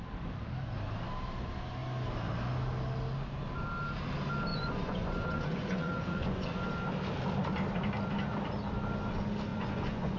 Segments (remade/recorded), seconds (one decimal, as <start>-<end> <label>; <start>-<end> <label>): 0.0-4.5 recorded; 4.5-6.6 remade; 6.6-9.5 recorded; 9.5-10.2 remade